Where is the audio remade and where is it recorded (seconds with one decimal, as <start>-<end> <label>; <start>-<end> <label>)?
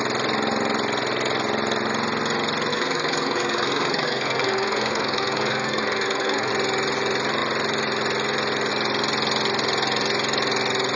0.0-2.7 recorded; 2.7-6.5 remade; 6.5-11.0 recorded